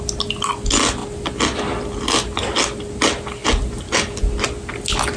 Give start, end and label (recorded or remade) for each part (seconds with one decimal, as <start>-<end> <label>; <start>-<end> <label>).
0.0-5.2 recorded